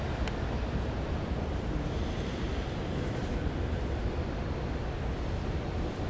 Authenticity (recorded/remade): recorded